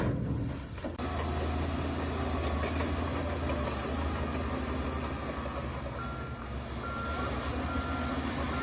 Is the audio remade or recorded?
recorded